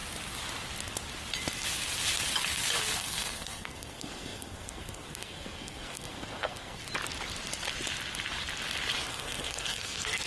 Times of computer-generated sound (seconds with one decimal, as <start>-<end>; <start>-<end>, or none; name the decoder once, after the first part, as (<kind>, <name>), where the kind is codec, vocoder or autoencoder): 3.0-6.8 (codec, SNAC); 9.1-10.3